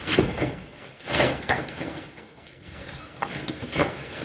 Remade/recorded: remade